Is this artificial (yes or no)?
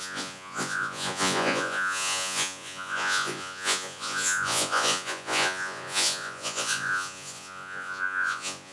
yes